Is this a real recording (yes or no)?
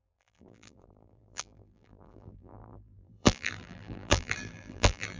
no